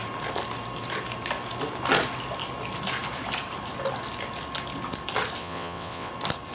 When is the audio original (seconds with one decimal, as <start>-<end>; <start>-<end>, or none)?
0.0-5.4; 6.1-6.5